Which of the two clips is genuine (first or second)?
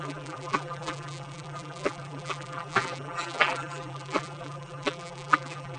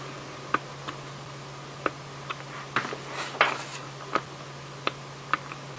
second